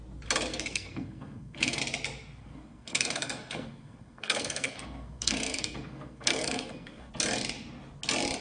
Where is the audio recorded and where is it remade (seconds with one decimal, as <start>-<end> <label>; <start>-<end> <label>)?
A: 0.0-0.5 recorded; 0.5-1.8 remade; 1.8-2.4 recorded; 2.4-7.1 remade; 7.1-8.4 recorded